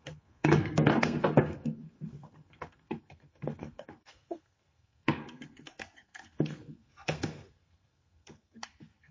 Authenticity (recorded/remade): remade